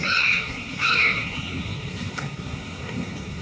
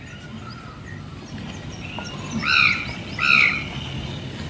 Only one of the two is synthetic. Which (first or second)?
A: first